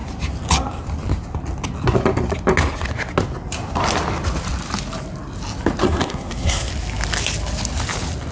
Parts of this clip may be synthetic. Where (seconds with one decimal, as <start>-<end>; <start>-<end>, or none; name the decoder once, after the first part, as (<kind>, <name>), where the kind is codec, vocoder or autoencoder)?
5.8-6.7 (codec, SNAC)

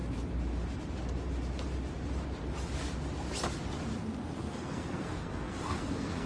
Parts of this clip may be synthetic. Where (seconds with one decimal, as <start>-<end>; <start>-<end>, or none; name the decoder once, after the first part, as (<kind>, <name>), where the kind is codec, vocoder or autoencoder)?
4.4-6.3 (codec, SNAC)

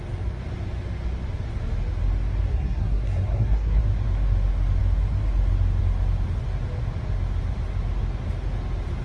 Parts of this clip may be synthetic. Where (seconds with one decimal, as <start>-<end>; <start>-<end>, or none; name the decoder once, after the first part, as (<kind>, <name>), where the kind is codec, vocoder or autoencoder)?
2.5-3.8 (codec, SNAC)

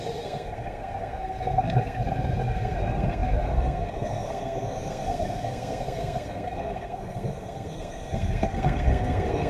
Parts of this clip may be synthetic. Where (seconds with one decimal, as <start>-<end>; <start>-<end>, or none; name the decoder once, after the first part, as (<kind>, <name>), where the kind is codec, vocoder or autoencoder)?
0.0-9.5 (codec, SNAC)

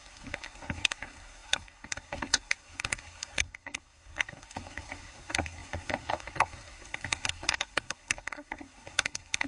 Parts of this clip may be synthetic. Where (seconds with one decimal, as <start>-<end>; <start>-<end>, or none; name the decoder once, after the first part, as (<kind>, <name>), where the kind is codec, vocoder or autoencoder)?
0.0-9.5 (codec, SNAC)

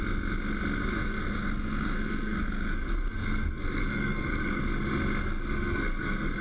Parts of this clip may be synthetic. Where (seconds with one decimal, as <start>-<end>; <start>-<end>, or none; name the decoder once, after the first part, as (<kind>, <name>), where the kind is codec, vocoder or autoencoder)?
0.8-4.6 (codec, SNAC); 5.2-6.4